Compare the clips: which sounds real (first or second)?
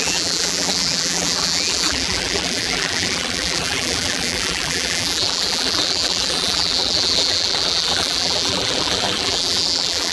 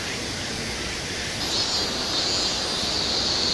second